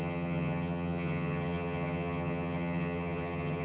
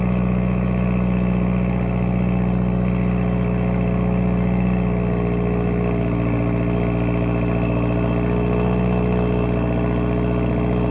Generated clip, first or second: first